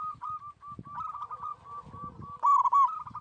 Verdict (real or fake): real